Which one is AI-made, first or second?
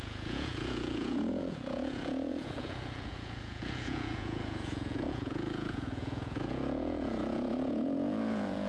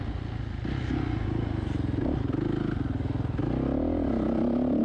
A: first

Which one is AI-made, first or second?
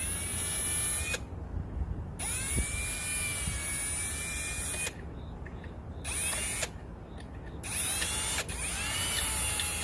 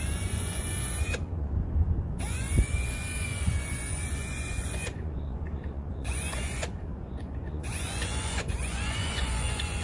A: second